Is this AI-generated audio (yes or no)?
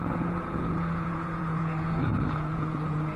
yes